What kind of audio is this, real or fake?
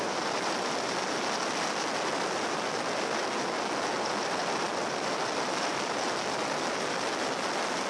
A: real